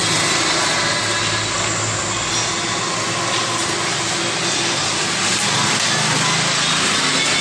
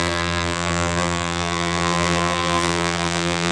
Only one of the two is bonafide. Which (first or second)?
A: first